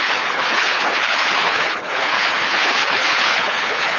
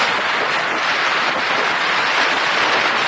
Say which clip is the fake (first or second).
first